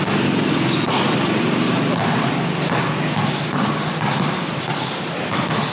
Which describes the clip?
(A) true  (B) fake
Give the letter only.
A